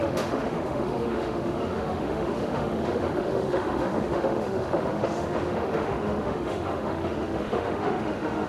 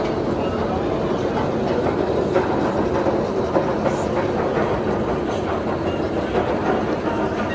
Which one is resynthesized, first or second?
first